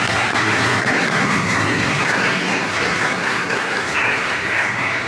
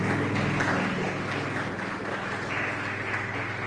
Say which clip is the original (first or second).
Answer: second